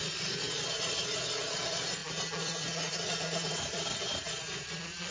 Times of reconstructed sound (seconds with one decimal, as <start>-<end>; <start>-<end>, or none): 0.0-2.0; 2.9-5.1